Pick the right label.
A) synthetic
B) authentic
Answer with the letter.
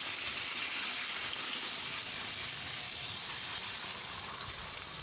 B